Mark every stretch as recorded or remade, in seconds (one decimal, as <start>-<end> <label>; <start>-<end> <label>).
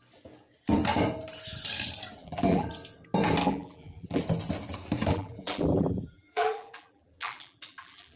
0.0-2.2 recorded; 2.2-2.7 remade; 2.7-3.4 recorded; 3.4-4.2 remade; 4.2-5.1 recorded; 5.1-8.2 remade